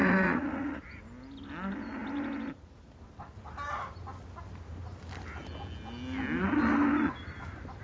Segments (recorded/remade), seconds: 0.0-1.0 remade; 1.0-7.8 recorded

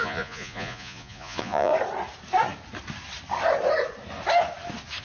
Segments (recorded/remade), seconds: 0.0-1.7 remade; 1.7-5.0 recorded

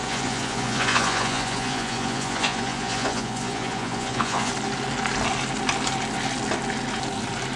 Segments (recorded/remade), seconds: 0.0-4.5 remade; 4.5-7.6 recorded